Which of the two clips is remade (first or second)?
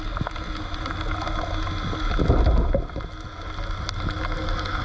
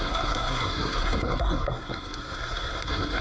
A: second